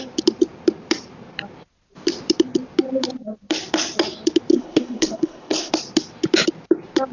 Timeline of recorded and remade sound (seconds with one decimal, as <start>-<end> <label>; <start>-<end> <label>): 0.0-4.5 recorded; 4.5-5.7 remade; 5.7-7.1 recorded